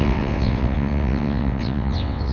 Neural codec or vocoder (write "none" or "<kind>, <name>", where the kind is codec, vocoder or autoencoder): vocoder, WaveNeXt